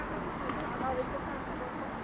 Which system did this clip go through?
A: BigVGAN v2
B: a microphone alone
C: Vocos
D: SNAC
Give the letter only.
B